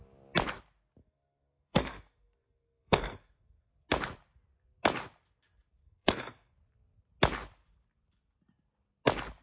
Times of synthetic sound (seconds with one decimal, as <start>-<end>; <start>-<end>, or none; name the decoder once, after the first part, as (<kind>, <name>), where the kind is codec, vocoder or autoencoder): 1.0-3.7 (codec, SNAC); 5.8-6.5